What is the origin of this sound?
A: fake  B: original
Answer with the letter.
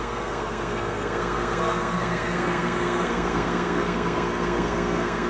A